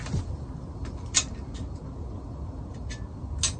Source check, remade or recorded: recorded